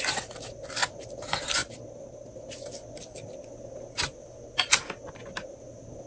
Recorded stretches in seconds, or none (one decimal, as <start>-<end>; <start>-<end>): 0.0-6.1